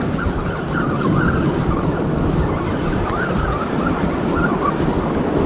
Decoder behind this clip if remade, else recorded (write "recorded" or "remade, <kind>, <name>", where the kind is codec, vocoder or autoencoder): recorded